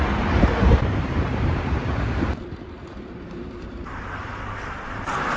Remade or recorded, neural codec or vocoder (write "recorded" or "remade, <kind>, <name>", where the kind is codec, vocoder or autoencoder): remade, vocoder, BigVGAN v2